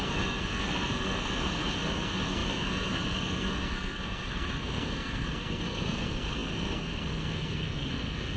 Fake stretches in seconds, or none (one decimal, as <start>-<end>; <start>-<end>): 0.0-8.4